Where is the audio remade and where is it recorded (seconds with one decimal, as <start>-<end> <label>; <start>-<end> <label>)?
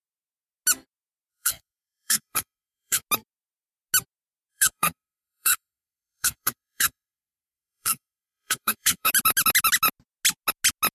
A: 0.0-1.3 recorded; 1.3-3.0 remade; 3.0-4.5 recorded; 4.5-9.1 remade; 9.1-10.9 recorded